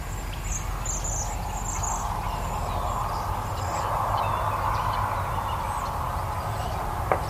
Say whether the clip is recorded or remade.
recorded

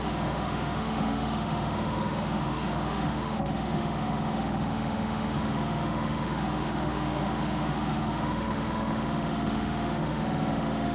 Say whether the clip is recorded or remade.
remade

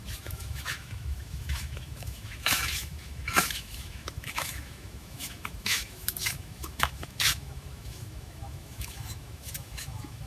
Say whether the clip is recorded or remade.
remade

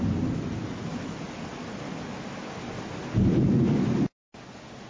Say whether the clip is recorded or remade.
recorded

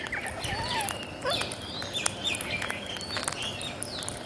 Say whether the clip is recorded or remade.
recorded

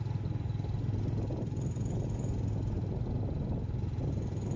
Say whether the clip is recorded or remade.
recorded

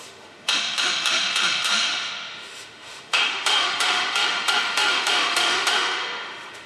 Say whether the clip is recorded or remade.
remade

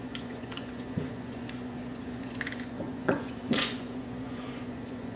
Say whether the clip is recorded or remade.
remade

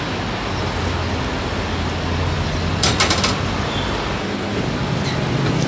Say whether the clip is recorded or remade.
recorded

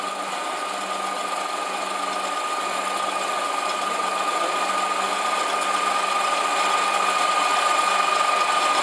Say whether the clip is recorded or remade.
recorded